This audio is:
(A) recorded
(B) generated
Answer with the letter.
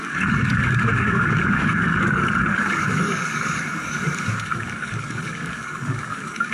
B